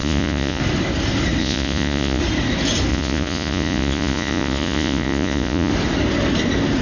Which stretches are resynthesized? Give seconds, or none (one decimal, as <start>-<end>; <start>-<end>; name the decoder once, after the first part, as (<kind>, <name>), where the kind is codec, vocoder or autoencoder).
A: 0.0-0.6 (vocoder, Vocos); 1.4-2.2; 2.9-5.7